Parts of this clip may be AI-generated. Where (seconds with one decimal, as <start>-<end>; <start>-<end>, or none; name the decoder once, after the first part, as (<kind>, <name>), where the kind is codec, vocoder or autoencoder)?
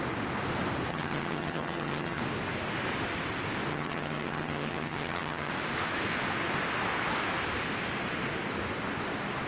0.9-2.2 (vocoder, HiFi-GAN); 3.7-5.5